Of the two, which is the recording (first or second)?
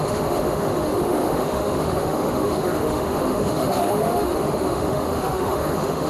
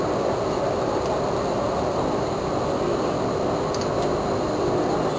second